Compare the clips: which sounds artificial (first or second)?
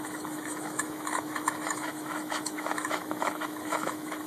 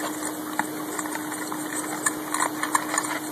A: first